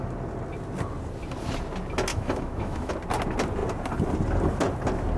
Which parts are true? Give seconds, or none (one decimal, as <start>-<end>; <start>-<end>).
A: 0.0-2.1; 2.9-5.2